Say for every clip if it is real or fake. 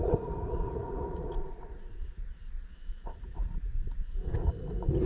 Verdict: fake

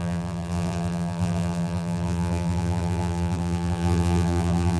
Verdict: fake